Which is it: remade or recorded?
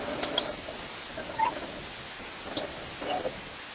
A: recorded